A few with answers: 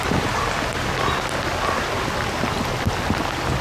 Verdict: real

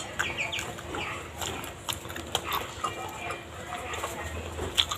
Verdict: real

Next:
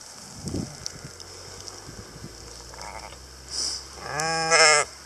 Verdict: real